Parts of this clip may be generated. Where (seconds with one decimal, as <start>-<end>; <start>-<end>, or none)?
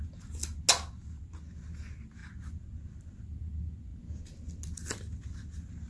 none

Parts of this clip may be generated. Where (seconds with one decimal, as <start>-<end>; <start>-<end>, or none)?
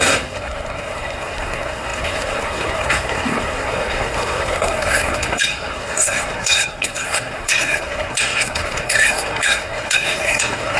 0.0-10.8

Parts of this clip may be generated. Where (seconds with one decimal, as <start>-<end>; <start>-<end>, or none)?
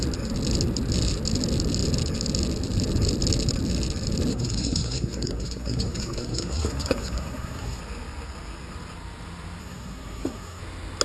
4.3-7.8; 9.6-10.6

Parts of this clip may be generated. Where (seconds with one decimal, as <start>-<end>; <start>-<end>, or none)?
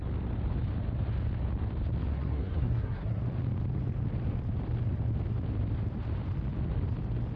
2.1-3.2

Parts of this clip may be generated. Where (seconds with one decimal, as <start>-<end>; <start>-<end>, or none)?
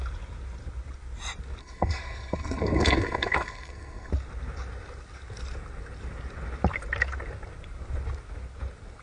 1.6-4.1